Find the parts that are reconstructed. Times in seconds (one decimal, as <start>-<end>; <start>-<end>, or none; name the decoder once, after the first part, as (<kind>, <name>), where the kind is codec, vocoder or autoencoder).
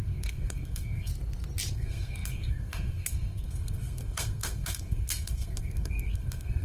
0.0-1.1 (codec, SNAC); 1.7-6.6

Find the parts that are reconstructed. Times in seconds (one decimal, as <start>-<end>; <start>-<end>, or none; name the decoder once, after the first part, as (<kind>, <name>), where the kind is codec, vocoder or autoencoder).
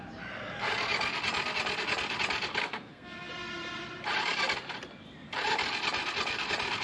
2.6-3.3 (codec, SNAC)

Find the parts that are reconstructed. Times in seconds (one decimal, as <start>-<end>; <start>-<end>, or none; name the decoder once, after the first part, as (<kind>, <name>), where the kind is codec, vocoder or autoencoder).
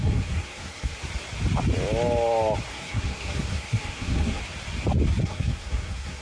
0.0-1.0 (codec, SNAC); 2.7-4.4; 5.2-6.2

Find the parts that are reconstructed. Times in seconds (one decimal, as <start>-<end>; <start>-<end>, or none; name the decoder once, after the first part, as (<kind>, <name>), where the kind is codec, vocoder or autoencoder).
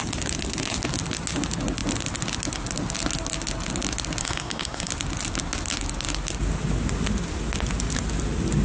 4.2-4.9 (codec, SNAC)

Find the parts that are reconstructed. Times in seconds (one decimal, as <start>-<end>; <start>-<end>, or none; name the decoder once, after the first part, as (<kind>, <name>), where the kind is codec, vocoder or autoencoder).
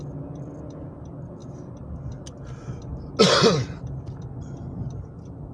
none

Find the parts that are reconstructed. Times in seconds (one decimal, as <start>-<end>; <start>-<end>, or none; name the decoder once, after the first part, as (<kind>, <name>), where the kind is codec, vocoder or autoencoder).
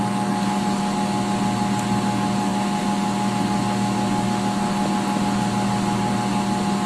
none